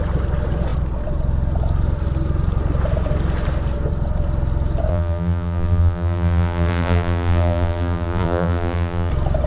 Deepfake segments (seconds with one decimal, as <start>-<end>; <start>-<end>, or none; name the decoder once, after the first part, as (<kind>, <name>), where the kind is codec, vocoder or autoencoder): 4.9-9.1 (vocoder, BigVGAN v2)